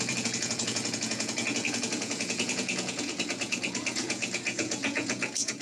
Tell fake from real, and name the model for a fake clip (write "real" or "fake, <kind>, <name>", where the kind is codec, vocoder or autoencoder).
fake, vocoder, Vocos